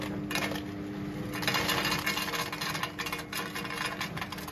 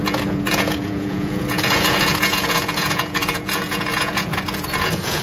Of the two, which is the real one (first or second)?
first